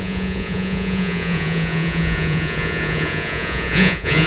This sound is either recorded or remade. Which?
remade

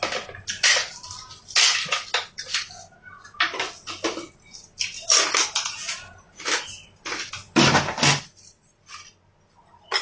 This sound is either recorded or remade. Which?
recorded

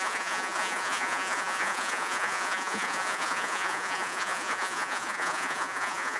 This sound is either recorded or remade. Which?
remade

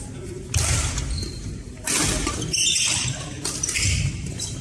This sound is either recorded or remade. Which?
recorded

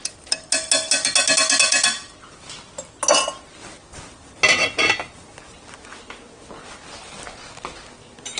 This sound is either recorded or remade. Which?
recorded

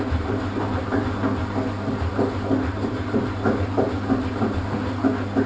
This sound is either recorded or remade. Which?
recorded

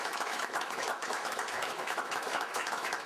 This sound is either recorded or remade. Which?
remade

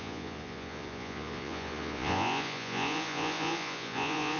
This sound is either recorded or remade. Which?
remade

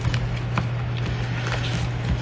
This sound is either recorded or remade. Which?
recorded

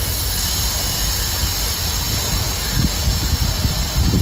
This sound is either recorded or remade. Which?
recorded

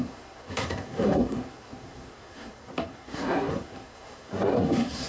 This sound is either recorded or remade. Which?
remade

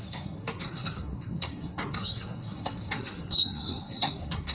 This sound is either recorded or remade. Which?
remade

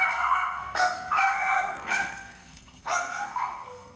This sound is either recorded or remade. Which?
remade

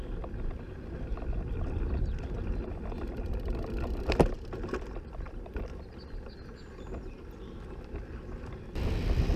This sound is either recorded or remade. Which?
remade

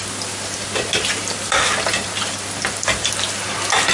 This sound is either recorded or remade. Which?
recorded